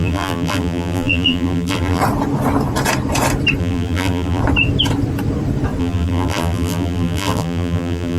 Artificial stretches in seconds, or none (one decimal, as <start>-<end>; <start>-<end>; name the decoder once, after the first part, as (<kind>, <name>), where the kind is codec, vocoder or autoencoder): 0.0-2.0 (vocoder, BigVGAN v2); 3.6-4.4; 5.8-8.2

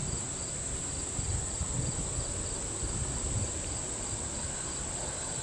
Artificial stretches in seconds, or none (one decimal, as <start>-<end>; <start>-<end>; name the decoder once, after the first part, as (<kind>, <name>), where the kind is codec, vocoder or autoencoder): 3.2-5.4 (vocoder, BigVGAN v2)

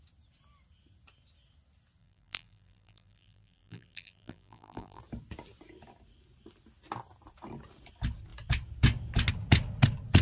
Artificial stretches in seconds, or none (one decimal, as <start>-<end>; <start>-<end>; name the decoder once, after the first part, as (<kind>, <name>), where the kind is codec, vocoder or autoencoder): 2.0-5.0 (vocoder, BigVGAN v2)

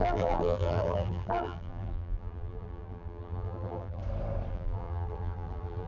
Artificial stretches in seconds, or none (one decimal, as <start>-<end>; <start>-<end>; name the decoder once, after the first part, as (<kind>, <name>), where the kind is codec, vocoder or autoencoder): 0.0-4.0 (vocoder, BigVGAN v2); 4.5-5.9

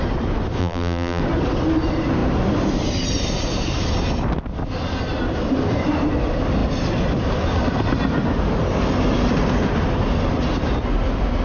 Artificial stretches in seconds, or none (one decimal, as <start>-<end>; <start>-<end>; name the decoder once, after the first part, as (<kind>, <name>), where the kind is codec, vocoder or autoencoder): 0.6-1.2 (vocoder, BigVGAN v2)

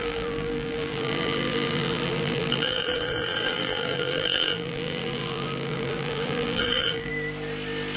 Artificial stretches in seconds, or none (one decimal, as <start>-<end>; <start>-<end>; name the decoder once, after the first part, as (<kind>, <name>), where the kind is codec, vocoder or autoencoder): 0.0-7.1 (vocoder, BigVGAN v2)

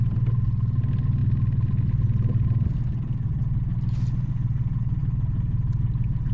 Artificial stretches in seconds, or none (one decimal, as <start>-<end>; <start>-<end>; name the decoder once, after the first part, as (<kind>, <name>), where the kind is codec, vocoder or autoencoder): none